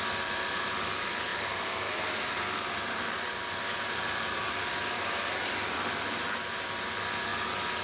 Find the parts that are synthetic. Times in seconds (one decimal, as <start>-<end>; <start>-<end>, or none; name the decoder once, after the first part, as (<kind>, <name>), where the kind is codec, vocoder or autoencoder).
0.0-7.3 (vocoder, BigVGAN v2)